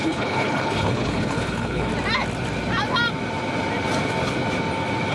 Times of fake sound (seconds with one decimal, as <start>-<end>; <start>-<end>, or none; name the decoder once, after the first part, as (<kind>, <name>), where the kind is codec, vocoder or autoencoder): 0.0-1.9 (codec, HILCodec)